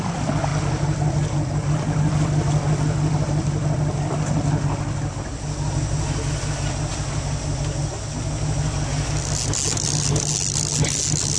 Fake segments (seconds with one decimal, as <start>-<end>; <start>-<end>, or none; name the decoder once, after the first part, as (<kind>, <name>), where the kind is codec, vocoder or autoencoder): none